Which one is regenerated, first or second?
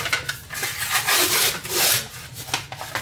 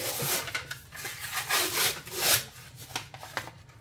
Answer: second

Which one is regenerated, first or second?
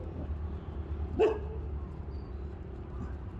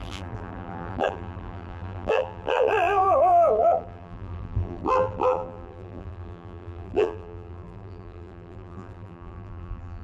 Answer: second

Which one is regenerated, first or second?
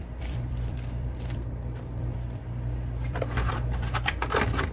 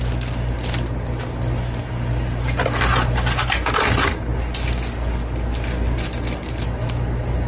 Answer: first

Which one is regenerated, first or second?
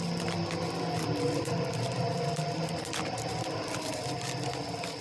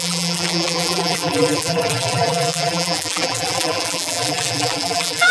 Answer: second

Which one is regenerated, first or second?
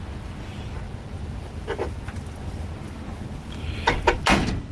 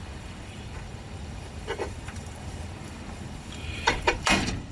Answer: second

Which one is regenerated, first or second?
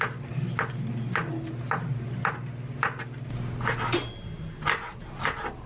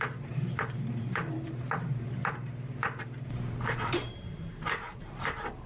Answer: second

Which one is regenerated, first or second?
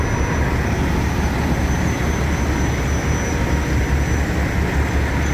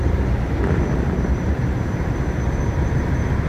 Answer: second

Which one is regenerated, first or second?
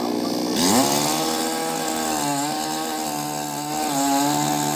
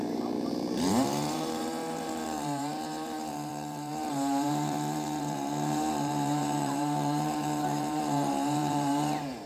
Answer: second